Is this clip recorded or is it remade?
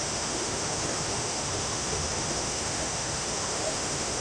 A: remade